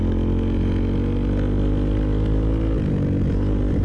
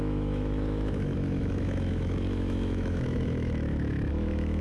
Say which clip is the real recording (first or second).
first